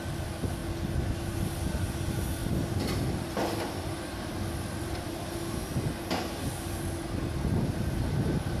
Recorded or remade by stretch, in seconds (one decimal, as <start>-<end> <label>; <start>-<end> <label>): 0.0-2.4 recorded; 2.4-4.1 remade; 4.1-8.6 recorded